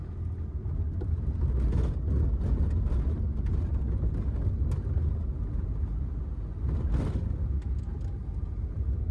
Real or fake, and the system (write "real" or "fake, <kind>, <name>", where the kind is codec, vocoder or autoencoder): real